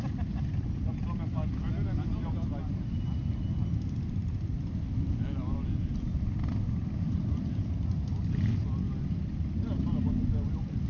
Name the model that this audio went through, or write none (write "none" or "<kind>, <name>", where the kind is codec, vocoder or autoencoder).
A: none